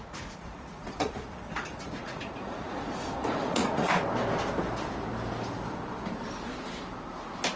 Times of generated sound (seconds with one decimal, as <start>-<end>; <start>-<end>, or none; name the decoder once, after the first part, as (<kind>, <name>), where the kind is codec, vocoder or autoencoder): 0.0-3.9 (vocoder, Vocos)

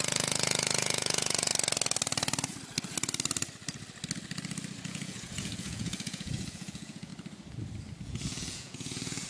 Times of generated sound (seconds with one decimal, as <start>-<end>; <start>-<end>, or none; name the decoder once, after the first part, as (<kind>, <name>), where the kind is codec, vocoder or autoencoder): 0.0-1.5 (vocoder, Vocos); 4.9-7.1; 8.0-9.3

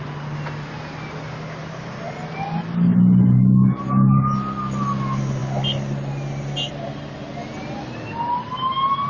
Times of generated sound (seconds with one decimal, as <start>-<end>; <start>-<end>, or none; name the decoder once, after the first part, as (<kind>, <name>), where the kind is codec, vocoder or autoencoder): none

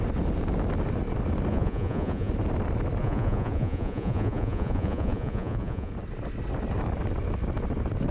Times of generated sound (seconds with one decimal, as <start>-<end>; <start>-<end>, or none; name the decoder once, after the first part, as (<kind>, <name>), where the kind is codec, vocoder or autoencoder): 1.5-2.3 (vocoder, Vocos); 3.0-5.9

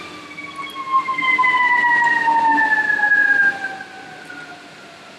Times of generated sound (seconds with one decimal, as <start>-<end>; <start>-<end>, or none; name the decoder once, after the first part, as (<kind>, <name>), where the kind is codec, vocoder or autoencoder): none

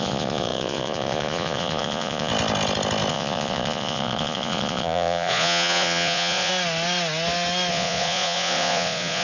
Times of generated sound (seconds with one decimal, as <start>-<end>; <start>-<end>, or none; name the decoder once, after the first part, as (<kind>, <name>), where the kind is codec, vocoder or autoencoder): 0.0-2.3 (vocoder, Vocos); 3.1-6.5; 7.7-9.2

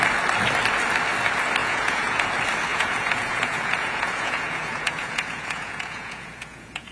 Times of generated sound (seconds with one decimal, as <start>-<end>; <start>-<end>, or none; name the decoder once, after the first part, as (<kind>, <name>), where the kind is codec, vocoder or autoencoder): 1.6-2.3 (vocoder, Vocos); 2.7-6.9